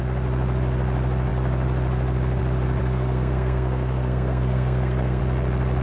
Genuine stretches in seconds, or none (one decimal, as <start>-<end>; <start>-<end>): 0.0-2.8; 5.2-5.8